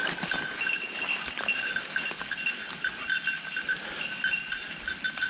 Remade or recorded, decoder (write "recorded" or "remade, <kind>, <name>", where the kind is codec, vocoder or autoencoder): recorded